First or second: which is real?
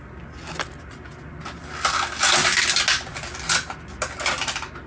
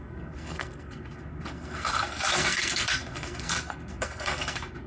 first